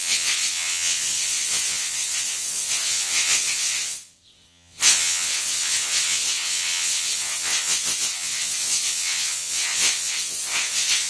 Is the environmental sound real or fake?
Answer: fake